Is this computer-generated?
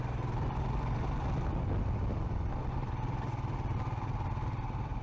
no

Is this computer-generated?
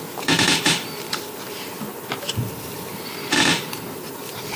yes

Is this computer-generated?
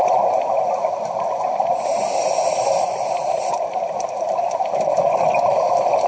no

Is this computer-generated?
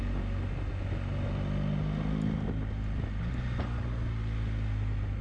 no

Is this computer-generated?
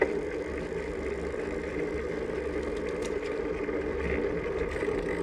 no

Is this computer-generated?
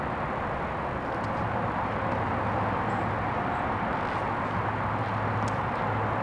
no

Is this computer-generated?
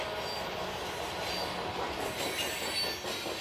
no